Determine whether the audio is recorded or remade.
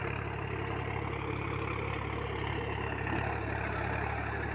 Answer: recorded